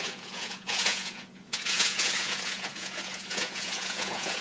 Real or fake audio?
fake